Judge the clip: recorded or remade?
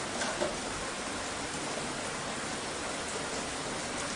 recorded